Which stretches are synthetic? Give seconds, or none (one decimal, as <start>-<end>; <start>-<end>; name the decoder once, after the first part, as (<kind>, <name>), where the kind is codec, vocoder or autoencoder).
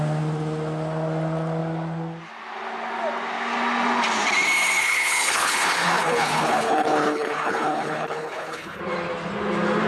4.8-8.8 (codec, HILCodec)